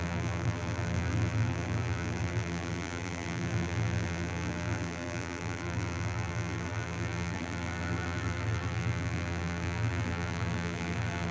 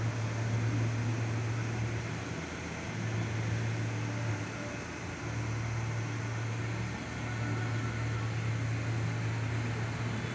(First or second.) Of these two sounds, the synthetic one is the first